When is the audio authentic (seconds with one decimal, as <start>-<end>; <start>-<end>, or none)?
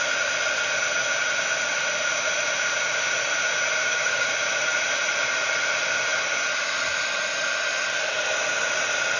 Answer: 0.0-3.8; 4.3-9.2